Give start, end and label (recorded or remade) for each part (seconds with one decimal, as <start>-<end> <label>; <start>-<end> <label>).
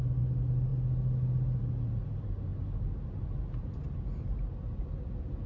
0.0-5.5 recorded